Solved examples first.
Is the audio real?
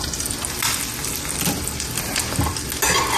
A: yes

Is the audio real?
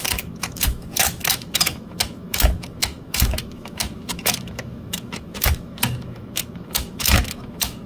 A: no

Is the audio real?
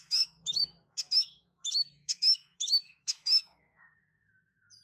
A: no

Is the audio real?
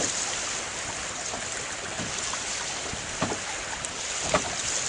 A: yes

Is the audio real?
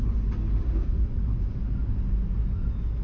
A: yes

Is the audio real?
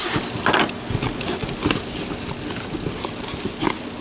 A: yes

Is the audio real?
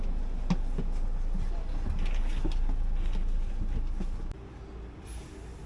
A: yes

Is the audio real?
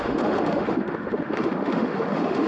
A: no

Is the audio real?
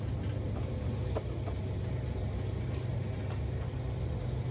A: yes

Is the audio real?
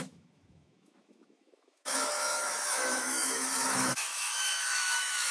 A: no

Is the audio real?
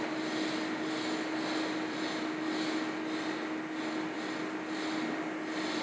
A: yes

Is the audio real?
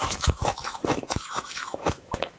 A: no